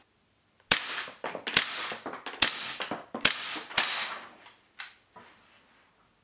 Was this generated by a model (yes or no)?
no